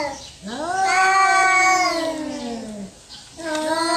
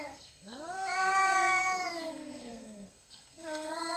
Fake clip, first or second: second